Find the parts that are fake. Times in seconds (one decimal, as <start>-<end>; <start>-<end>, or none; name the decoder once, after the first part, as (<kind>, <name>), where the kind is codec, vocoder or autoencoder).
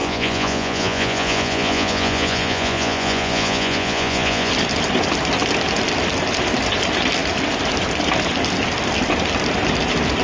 0.0-4.5 (vocoder, Vocos)